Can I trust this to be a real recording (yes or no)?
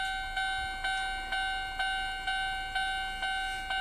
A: yes